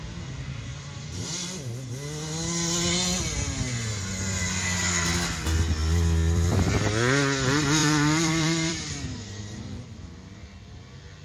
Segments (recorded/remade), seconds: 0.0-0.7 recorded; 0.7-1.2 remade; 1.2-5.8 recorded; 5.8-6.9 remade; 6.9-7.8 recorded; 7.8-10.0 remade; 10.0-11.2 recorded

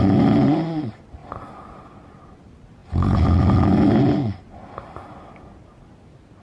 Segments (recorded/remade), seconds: 0.0-6.4 recorded

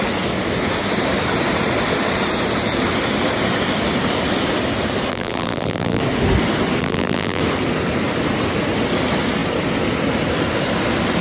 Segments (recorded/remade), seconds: 0.0-5.1 recorded; 5.1-6.0 remade; 6.0-6.8 recorded; 6.8-7.4 remade; 7.4-11.2 recorded

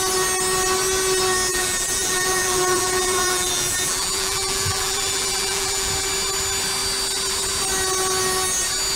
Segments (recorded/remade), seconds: 0.0-1.5 recorded; 1.5-5.9 remade; 5.9-9.0 recorded

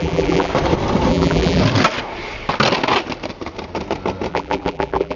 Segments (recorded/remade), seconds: 0.0-0.5 remade; 0.5-1.1 recorded; 1.1-1.6 remade; 1.6-4.3 recorded; 4.3-5.2 remade